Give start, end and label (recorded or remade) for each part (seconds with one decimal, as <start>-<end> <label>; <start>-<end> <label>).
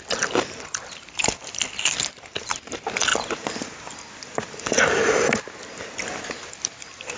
0.0-7.2 recorded